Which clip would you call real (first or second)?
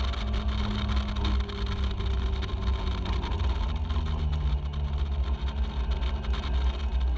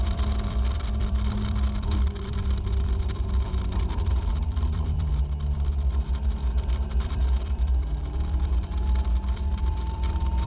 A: first